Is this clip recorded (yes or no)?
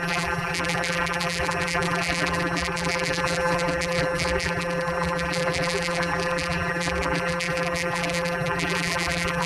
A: no